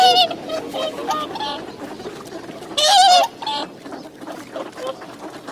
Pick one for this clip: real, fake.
real